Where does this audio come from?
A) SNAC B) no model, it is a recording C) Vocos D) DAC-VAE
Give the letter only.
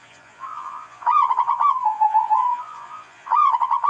C